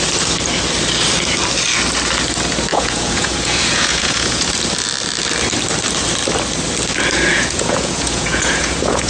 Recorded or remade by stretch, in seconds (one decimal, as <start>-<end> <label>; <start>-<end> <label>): 0.0-2.7 recorded; 2.7-4.5 remade; 4.5-7.3 recorded; 7.3-9.1 remade